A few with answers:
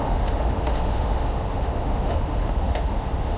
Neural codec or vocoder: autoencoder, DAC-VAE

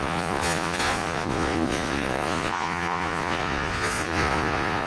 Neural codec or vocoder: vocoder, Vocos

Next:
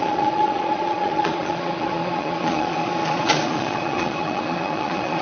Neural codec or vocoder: vocoder, Vocos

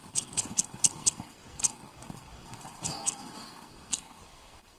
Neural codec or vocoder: codec, SNAC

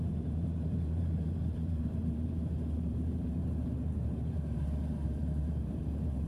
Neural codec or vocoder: vocoder, BigVGAN v2